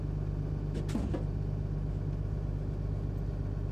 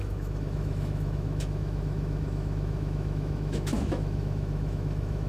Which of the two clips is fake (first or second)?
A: second